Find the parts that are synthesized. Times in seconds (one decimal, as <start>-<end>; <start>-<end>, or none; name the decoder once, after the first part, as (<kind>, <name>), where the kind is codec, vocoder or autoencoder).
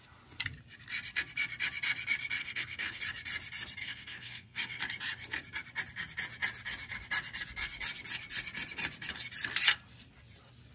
2.4-3.0 (codec, SNAC); 3.8-4.8